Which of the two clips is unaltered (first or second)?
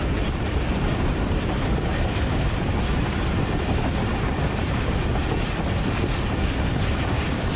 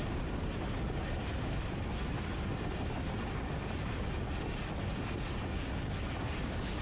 second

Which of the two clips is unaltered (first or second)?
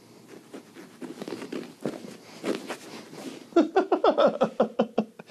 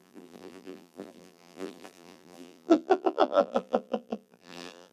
first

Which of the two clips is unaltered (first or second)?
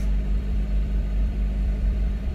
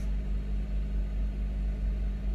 second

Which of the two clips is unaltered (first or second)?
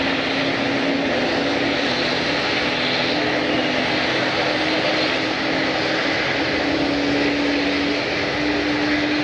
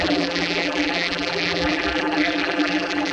first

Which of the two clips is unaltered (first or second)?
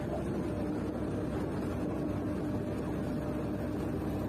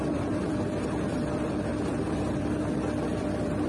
first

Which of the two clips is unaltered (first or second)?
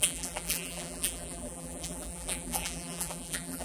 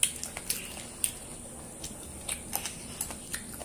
second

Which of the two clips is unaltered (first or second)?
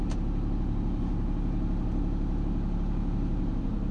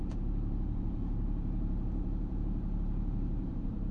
first